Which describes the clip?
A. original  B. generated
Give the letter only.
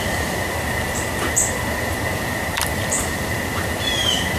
B